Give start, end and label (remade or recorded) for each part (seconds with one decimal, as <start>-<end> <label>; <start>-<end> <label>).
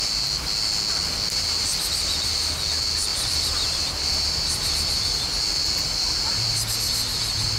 0.0-3.1 recorded; 3.1-6.8 remade; 6.8-7.6 recorded